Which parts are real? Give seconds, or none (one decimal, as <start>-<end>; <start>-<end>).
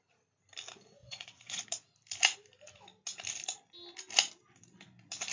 0.0-1.0; 1.6-5.3